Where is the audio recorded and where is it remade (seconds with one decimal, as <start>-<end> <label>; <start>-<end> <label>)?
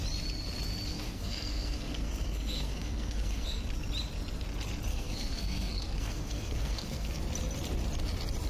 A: 0.0-0.9 recorded; 0.9-3.6 remade; 3.6-4.9 recorded; 4.9-7.2 remade; 7.2-8.5 recorded